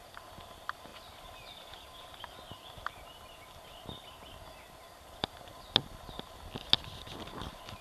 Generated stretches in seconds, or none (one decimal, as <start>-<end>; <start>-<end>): 0.9-5.4